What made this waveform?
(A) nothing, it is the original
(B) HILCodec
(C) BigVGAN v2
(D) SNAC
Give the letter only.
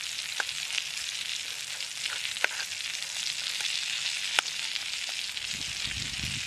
A